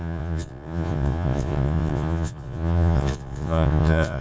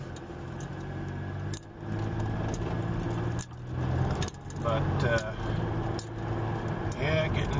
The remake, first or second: first